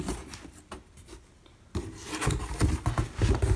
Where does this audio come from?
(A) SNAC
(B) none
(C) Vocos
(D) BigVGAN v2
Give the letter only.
B